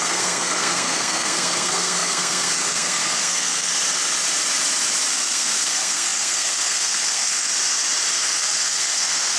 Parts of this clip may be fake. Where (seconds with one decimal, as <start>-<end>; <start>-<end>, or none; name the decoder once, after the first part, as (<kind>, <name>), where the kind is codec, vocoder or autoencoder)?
0.0-3.7 (codec, SNAC); 5.1-7.5; 8.1-9.4